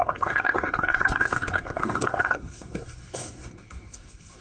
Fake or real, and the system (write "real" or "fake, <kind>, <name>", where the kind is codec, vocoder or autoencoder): fake, codec, SNAC